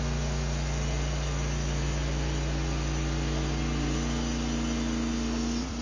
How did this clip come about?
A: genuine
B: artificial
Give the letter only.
A